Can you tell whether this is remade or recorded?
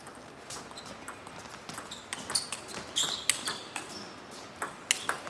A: recorded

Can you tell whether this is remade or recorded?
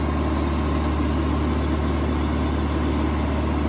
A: recorded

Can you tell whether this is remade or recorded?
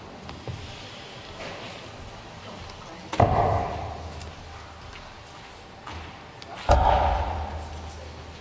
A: recorded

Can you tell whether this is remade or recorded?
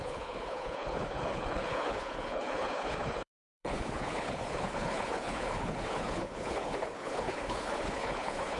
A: remade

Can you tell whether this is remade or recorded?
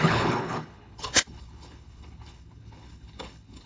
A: remade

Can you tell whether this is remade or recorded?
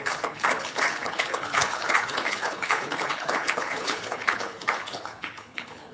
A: remade